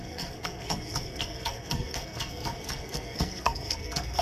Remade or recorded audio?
remade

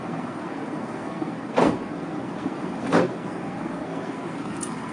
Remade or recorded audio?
remade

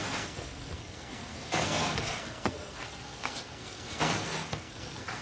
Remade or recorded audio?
remade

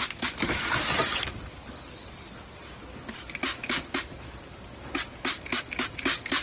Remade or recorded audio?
recorded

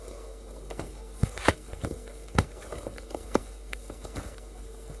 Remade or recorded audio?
remade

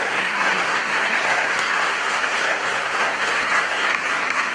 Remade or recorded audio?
remade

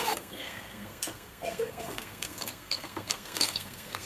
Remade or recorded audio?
remade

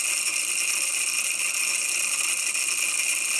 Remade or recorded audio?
recorded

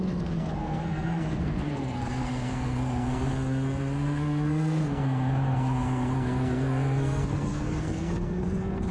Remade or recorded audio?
remade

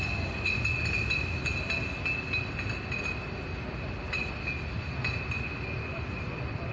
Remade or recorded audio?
recorded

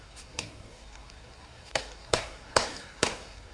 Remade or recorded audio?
remade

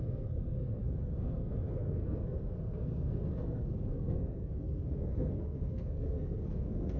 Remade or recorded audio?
remade